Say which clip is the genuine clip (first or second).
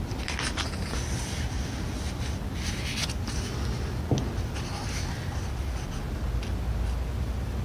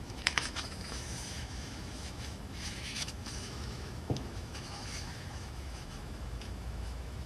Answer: first